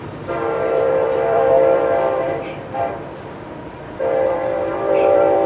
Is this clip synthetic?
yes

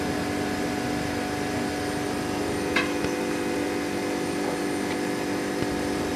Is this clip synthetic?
yes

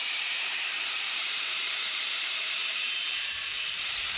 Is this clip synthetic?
yes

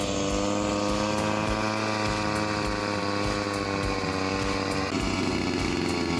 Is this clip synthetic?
no